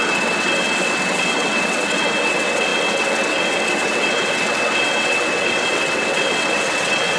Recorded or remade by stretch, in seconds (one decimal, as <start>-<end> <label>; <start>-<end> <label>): 0.0-7.2 remade